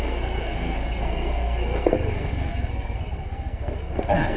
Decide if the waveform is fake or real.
fake